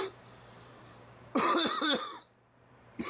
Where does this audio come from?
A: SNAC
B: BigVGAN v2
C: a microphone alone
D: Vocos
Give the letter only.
B